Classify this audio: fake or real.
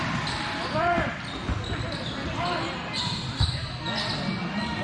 real